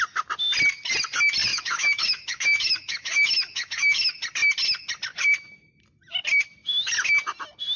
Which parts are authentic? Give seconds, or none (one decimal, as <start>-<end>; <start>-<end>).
0.0-1.5; 4.1-7.8